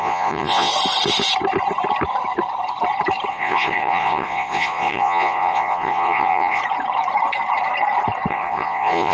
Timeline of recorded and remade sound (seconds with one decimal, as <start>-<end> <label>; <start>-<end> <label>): 0.0-0.7 remade; 0.7-3.3 recorded; 3.3-6.6 remade; 6.6-8.3 recorded; 8.3-9.1 remade